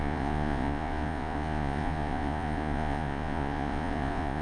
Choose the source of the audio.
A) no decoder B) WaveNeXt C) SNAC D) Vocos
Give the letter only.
D